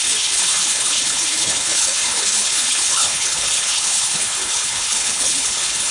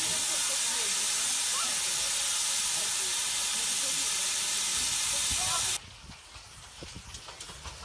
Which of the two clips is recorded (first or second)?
second